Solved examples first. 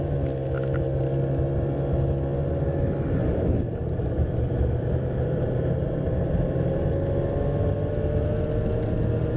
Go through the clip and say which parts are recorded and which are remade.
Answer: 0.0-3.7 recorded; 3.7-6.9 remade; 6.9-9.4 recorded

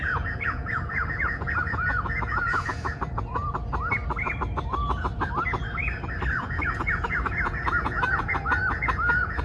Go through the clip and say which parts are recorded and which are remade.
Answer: 0.0-3.4 remade; 3.4-6.3 recorded; 6.3-9.4 remade

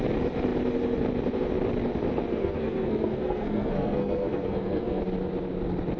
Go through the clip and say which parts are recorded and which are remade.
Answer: 0.0-2.3 recorded; 2.3-5.0 remade; 5.0-6.0 recorded

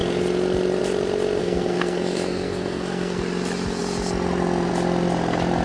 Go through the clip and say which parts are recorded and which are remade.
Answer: 0.0-1.4 recorded; 1.4-3.2 remade; 3.2-5.6 recorded

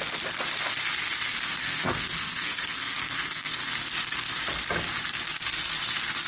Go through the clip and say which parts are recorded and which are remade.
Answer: 0.0-1.6 recorded; 1.6-3.6 remade; 3.6-6.3 recorded

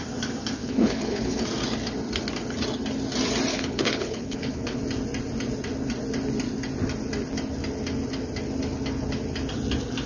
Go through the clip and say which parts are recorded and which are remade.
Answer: 0.0-0.6 recorded; 0.6-1.4 remade; 1.4-3.5 recorded; 3.5-4.8 remade; 4.8-10.1 recorded